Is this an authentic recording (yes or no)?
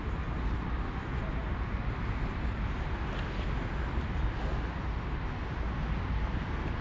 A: yes